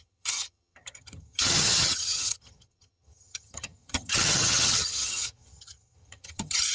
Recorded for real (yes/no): no